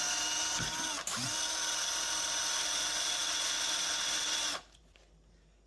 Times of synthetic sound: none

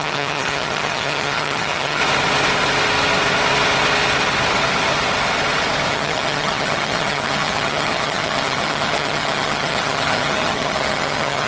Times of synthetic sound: 0.0-2.0 (vocoder, HiFi-GAN); 5.9-11.5